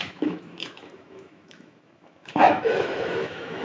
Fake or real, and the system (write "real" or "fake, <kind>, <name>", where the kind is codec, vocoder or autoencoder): fake, autoencoder, DAC-VAE